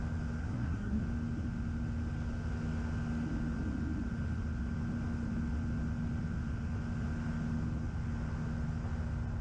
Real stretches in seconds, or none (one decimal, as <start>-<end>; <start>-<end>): 0.0-0.4; 1.0-9.4